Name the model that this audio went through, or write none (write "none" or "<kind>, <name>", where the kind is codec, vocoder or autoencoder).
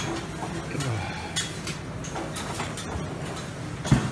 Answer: none